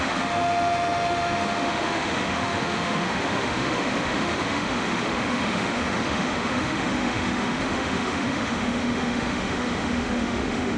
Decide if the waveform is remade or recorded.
remade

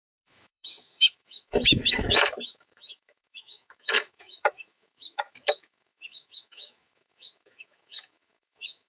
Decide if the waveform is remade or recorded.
remade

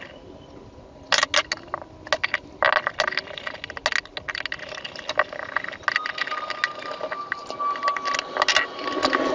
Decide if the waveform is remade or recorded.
recorded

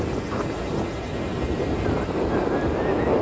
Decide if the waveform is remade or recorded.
recorded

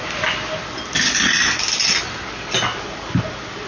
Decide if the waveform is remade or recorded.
recorded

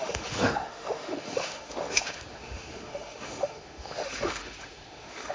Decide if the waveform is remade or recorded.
remade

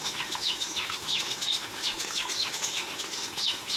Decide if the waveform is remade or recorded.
remade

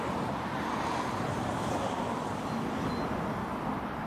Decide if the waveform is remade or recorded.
recorded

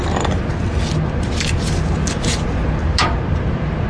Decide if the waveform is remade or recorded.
recorded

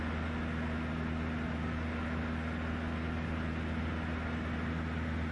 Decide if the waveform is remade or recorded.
recorded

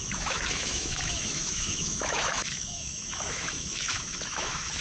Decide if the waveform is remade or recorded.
remade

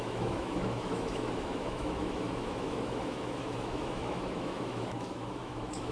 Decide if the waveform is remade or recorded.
remade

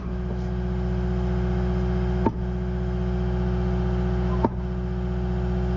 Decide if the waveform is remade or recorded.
recorded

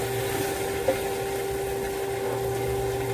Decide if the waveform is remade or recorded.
recorded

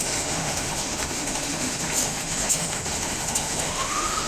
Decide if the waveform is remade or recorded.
remade